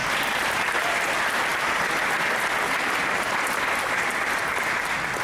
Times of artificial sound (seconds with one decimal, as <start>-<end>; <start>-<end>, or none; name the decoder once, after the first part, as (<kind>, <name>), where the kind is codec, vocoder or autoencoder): 0.0-1.0 (vocoder, BigVGAN v2)